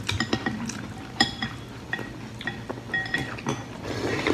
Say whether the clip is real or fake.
real